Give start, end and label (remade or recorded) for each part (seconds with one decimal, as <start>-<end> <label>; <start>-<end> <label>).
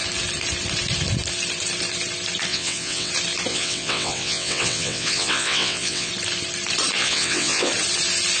0.0-2.5 recorded; 2.5-3.1 remade; 3.1-3.5 recorded; 3.5-6.1 remade; 6.1-7.0 recorded; 7.0-7.7 remade; 7.7-8.4 recorded